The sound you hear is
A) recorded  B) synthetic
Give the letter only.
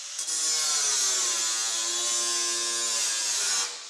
A